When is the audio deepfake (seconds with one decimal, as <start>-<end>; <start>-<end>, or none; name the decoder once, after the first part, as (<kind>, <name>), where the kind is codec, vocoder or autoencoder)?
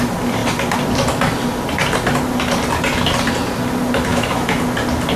4.1-4.6 (autoencoder, DAC-VAE)